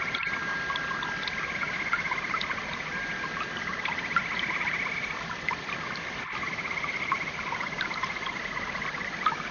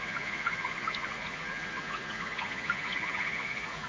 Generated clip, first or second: second